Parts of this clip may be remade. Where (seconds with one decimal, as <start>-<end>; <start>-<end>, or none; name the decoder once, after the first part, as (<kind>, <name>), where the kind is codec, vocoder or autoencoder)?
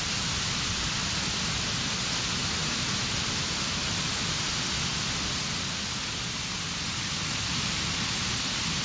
2.6-3.9 (vocoder, BigVGAN v2)